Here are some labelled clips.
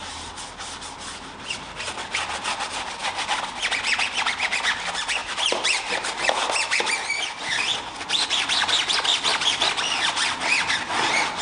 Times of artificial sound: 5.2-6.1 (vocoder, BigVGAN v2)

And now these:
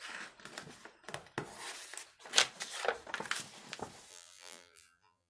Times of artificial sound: 4.1-5.3 (vocoder, BigVGAN v2)

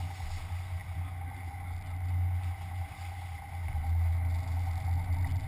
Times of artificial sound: none

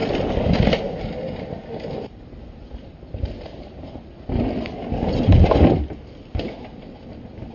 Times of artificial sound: none